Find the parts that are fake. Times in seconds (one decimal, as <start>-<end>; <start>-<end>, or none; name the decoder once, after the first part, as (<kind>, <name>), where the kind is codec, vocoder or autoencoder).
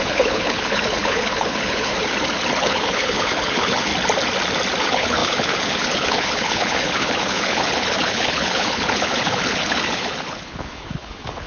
0.0-1.9 (codec, HILCodec); 2.6-3.9; 4.8-11.5